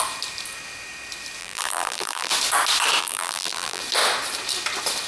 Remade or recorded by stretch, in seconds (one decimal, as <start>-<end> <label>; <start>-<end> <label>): 0.0-1.4 recorded; 1.4-2.3 remade; 2.3-3.0 recorded; 3.0-3.8 remade; 3.8-5.1 recorded